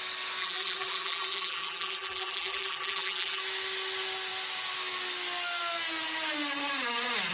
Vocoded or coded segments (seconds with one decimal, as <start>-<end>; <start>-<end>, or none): 0.4-3.4